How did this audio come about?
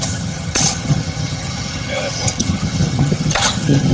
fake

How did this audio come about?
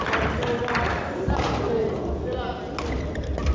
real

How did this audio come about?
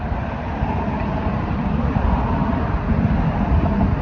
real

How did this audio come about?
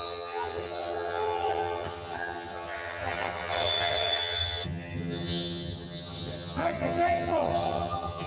fake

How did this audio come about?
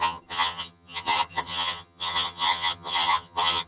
fake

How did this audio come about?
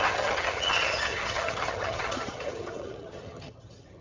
fake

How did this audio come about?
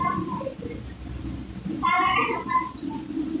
real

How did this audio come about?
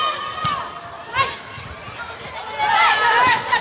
real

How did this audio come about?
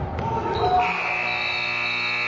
real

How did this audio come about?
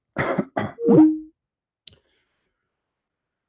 real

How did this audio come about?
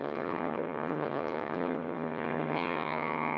fake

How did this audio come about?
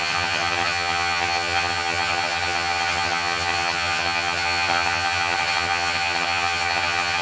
fake